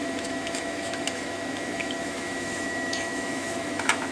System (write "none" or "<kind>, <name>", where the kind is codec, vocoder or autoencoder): autoencoder, DAC-VAE